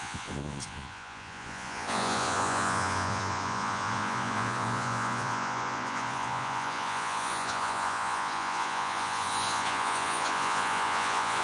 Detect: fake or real fake